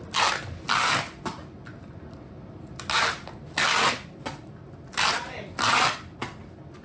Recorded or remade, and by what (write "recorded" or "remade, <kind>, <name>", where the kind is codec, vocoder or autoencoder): recorded